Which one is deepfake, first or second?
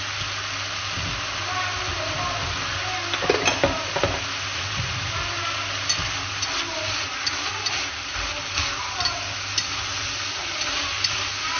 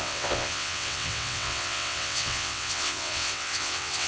second